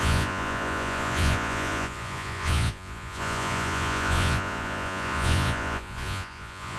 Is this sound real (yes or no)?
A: no